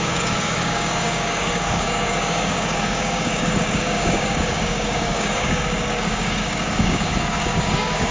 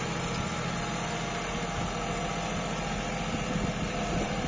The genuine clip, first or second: second